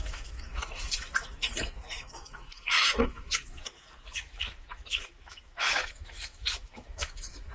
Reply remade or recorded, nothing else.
remade